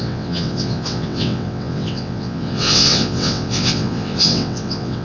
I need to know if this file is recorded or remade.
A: remade